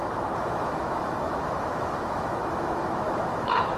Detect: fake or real fake